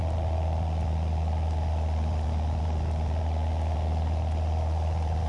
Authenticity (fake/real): real